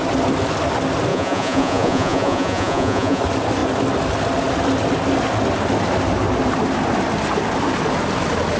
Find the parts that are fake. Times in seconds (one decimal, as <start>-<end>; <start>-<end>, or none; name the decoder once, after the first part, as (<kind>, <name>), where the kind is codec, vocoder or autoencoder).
1.1-3.2 (vocoder, Vocos)